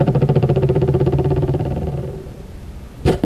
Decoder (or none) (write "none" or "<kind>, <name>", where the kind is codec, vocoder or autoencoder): vocoder, BigVGAN v2